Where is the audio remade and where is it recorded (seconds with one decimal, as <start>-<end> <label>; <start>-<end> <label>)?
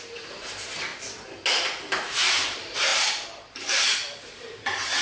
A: 0.0-0.9 remade; 0.9-1.8 recorded; 1.8-5.0 remade